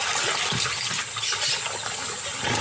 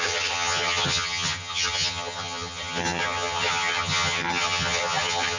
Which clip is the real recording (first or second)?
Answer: first